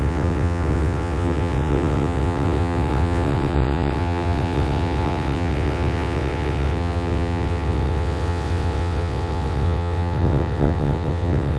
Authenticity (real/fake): fake